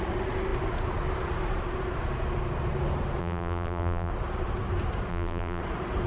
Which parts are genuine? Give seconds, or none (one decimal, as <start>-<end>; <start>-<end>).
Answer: 0.0-3.2; 4.1-5.1; 5.6-6.1